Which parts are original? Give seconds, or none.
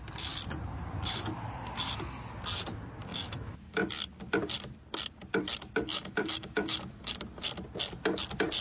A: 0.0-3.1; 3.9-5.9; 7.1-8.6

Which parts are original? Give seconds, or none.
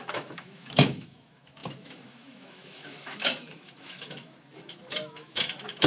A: none